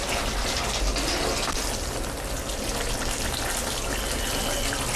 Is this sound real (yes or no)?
yes